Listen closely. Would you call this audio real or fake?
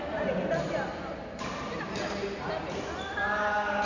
real